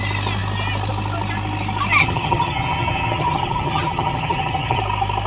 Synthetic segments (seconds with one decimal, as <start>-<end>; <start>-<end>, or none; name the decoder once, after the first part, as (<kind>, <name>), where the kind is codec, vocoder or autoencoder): 2.0-4.8 (vocoder, HiFi-GAN)